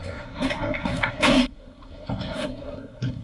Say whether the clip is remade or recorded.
remade